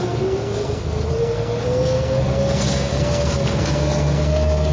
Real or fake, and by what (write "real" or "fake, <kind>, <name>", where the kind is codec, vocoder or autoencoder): fake, codec, SNAC